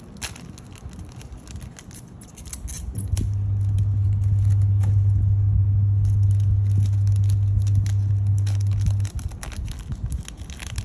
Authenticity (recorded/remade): recorded